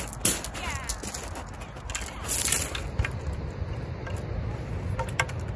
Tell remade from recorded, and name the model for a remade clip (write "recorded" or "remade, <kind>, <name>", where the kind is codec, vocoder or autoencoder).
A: recorded